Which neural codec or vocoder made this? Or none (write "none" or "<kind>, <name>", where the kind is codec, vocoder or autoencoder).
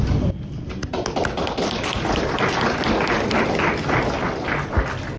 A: none